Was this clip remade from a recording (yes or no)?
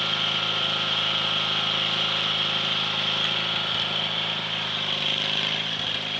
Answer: no